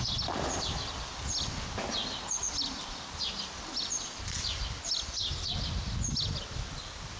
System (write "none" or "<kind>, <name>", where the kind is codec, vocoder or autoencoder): none